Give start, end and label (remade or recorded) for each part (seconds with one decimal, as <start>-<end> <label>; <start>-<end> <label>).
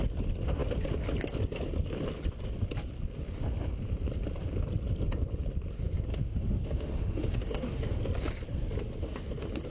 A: 0.0-6.1 recorded; 6.1-8.0 remade; 8.0-9.7 recorded